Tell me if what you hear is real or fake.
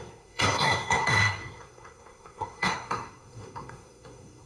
fake